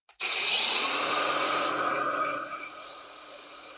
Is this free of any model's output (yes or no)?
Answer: no